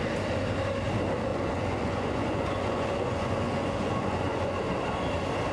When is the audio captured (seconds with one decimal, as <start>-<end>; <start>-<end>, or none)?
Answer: 0.0-1.3; 4.6-5.5